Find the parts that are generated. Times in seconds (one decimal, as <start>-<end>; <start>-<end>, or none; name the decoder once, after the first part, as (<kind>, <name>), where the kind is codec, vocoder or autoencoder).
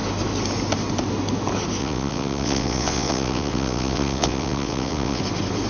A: 1.8-5.2 (vocoder, WaveNeXt)